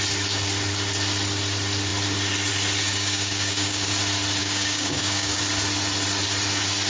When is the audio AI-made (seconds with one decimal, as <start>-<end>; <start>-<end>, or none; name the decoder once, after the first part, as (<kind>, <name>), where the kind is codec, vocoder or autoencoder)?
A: 2.9-3.9 (codec, DAC); 4.4-5.4